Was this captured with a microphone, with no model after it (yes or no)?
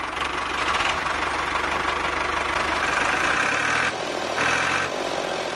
yes